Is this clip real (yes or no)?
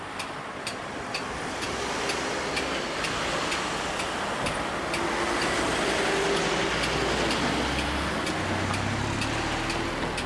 yes